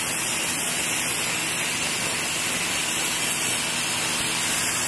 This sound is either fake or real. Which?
real